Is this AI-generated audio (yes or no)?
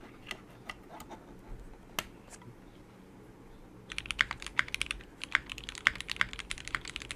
no